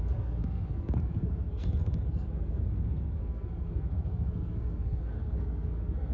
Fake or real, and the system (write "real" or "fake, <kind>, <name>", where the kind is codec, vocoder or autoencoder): fake, codec, SNAC